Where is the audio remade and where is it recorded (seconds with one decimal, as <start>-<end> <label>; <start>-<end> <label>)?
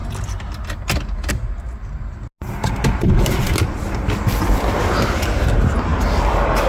0.0-6.7 recorded